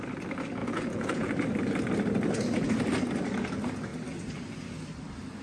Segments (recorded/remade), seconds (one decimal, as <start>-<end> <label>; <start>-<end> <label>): 0.0-0.6 recorded; 0.6-1.3 remade; 1.3-5.4 recorded